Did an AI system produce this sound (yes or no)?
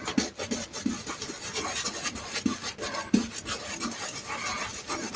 no